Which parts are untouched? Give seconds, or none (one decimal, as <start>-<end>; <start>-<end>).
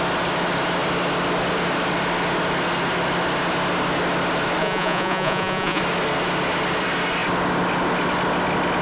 0.0-4.6; 5.8-8.8